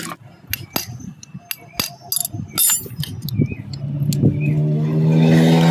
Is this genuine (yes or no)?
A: yes